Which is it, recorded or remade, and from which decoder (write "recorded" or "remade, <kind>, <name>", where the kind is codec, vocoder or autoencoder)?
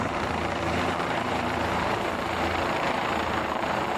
remade, vocoder, BigVGAN v2